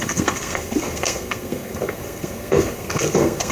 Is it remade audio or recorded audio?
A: remade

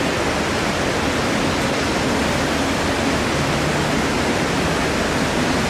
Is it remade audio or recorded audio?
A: recorded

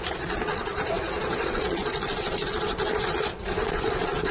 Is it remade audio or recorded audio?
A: remade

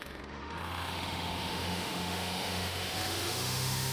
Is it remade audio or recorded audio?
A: remade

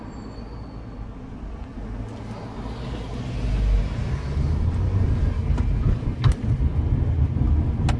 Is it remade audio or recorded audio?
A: recorded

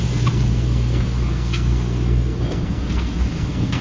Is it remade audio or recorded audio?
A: remade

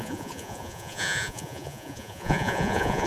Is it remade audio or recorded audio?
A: remade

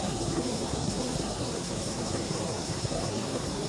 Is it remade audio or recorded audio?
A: remade